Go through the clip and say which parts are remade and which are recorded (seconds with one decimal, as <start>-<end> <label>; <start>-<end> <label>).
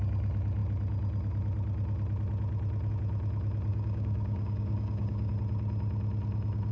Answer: 0.0-3.7 recorded; 3.7-5.3 remade; 5.3-6.7 recorded